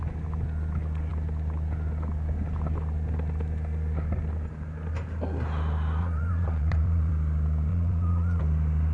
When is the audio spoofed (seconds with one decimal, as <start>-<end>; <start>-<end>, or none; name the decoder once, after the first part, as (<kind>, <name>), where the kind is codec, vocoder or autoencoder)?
6.0-7.1 (vocoder, Vocos); 7.7-8.4